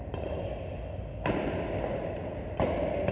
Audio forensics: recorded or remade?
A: recorded